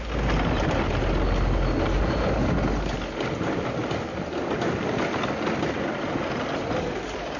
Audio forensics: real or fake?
real